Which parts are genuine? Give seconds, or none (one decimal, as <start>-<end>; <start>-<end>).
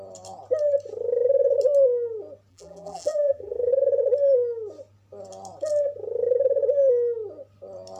0.0-2.5; 3.7-8.0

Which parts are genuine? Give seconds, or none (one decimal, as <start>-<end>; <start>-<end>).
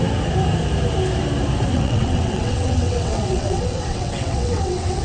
0.0-1.7